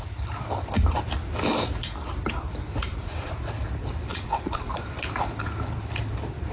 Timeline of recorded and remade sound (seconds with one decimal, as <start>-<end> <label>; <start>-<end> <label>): 0.0-2.9 recorded; 2.9-3.4 remade; 3.4-4.1 recorded; 4.1-4.8 remade; 4.8-6.5 recorded